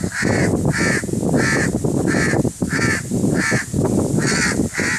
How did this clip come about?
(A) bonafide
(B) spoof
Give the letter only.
A